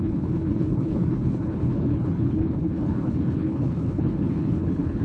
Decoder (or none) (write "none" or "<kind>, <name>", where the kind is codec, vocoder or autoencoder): codec, HILCodec